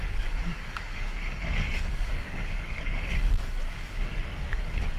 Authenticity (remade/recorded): remade